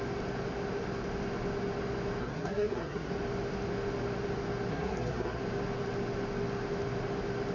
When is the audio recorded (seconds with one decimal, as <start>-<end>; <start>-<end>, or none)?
0.0-2.2; 3.1-4.7; 5.4-7.5